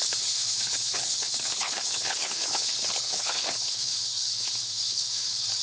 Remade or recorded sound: remade